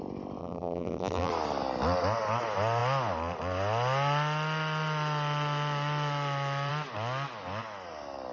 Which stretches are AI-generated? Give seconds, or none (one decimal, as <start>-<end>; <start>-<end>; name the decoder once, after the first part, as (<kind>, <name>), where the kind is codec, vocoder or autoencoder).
0.4-1.3 (vocoder, BigVGAN v2)

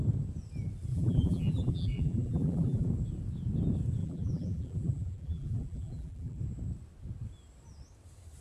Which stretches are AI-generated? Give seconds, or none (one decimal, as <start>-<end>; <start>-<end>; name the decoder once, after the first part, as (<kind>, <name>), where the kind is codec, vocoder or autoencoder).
0.9-2.9 (vocoder, BigVGAN v2); 4.0-6.4

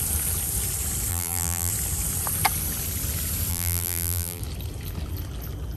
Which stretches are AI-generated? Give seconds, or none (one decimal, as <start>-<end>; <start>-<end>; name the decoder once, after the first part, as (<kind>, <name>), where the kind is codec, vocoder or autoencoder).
1.1-1.7 (vocoder, BigVGAN v2); 3.5-4.4

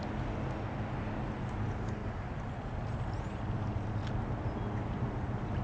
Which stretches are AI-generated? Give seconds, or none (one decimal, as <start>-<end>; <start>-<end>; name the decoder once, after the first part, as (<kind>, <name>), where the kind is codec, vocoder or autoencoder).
1.5-4.0 (vocoder, BigVGAN v2); 4.9-5.6

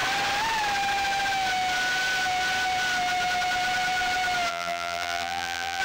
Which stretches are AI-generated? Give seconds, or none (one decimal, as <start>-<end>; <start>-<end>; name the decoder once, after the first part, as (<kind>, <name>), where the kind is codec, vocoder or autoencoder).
4.5-5.8 (vocoder, BigVGAN v2)

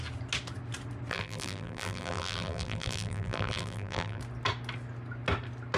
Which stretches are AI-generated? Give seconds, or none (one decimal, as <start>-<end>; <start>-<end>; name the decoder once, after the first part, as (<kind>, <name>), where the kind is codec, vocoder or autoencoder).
1.1-4.2 (vocoder, BigVGAN v2)